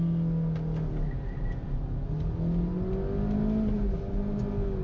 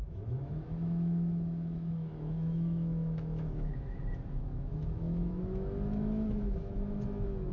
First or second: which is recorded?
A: first